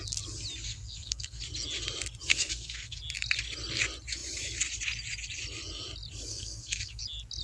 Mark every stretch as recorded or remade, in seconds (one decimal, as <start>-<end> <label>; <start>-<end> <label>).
0.0-0.7 recorded; 0.7-1.4 remade; 1.4-2.3 recorded; 2.3-3.0 remade; 3.0-6.3 recorded; 6.3-7.0 remade; 7.0-7.4 recorded